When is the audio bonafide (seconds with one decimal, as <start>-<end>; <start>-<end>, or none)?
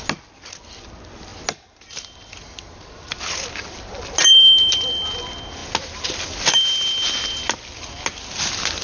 0.0-8.8